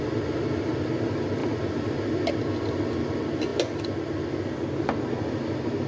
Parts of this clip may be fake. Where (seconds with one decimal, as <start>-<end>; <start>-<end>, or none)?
none